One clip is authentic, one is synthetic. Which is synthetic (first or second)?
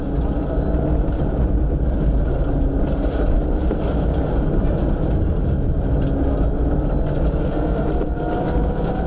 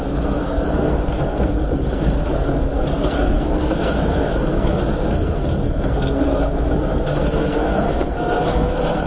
second